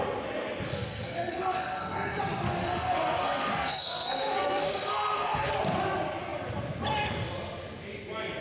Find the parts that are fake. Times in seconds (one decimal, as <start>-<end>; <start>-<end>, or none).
0.7-2.2; 2.6-5.5